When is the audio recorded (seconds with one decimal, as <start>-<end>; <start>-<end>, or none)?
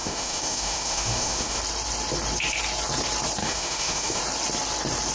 1.6-3.4; 4.2-5.1